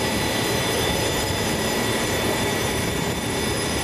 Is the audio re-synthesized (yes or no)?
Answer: yes